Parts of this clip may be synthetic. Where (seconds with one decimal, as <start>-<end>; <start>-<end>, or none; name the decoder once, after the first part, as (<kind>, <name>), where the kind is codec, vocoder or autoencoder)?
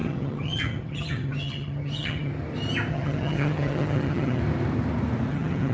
0.0-2.3 (vocoder, HiFi-GAN); 2.9-4.4; 5.3-5.7